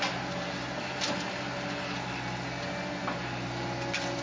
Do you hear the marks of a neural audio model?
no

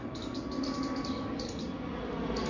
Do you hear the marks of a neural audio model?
no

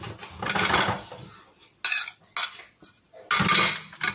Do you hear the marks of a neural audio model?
no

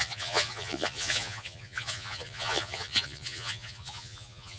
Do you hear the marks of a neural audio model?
yes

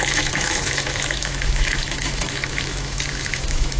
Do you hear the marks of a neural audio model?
yes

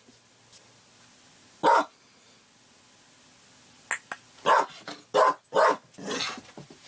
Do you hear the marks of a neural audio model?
no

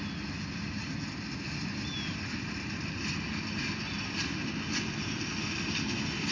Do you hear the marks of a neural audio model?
no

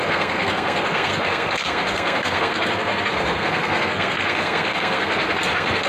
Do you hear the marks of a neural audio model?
yes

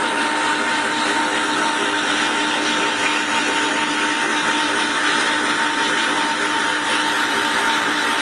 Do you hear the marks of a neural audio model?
no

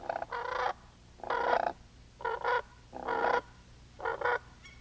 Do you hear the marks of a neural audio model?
no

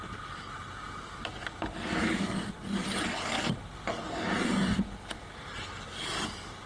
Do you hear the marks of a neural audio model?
no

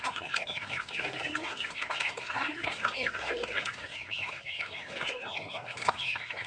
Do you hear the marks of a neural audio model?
yes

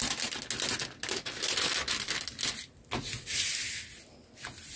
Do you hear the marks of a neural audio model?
no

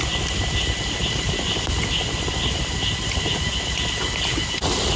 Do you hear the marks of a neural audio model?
no